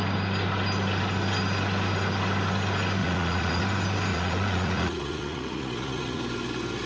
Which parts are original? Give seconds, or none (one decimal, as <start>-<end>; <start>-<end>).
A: 0.0-3.0; 3.6-4.1; 6.2-6.9